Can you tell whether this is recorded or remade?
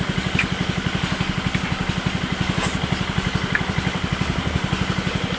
recorded